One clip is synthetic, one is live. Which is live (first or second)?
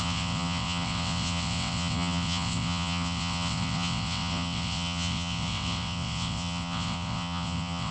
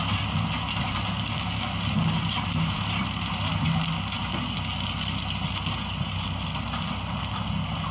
second